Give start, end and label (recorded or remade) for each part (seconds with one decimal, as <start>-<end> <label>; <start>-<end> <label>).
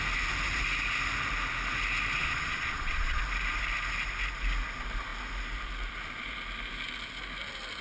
0.0-2.2 recorded; 2.2-3.2 remade; 3.2-7.8 recorded